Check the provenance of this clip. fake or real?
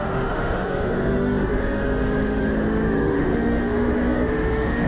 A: fake